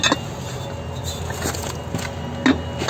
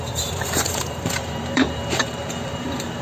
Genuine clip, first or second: first